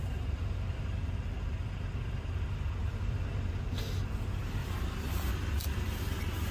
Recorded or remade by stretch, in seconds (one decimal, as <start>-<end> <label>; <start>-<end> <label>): 0.0-2.8 recorded; 2.8-3.8 remade; 3.8-4.6 recorded; 4.6-5.3 remade; 5.3-6.5 recorded